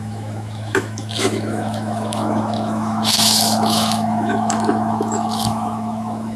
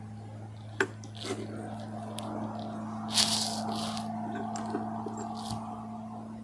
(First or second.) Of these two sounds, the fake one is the first